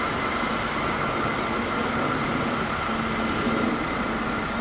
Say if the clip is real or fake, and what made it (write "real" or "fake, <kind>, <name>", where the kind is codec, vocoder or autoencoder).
real